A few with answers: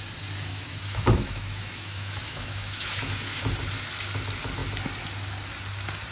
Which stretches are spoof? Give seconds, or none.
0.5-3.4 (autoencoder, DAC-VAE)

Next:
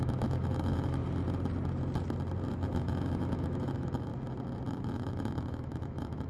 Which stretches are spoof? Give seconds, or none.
0.0-1.0 (autoencoder, DAC-VAE); 2.5-4.1; 4.7-6.3

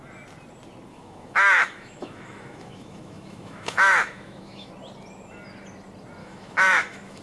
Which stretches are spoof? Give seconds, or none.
0.9-4.7 (autoencoder, DAC-VAE); 6.2-7.2

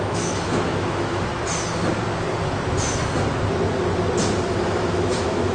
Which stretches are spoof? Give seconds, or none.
0.0-1.3 (autoencoder, DAC-VAE); 4.6-5.5

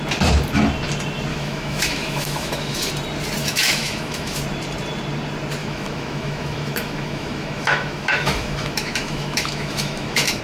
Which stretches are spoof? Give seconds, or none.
1.3-2.9 (autoencoder, DAC-VAE); 3.4-4.4; 5.6-10.4